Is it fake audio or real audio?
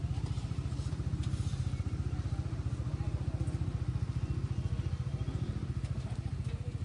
real